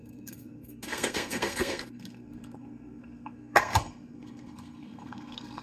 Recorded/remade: remade